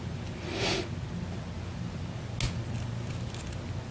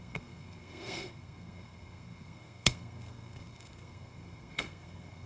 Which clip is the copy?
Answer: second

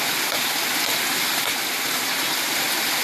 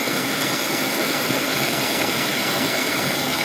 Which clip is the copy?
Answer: second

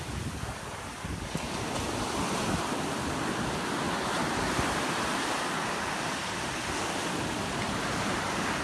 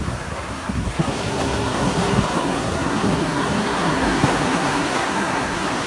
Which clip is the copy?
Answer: second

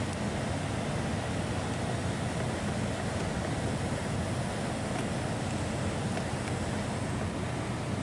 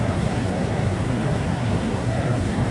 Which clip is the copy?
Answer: second